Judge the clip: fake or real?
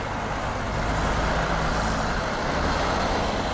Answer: real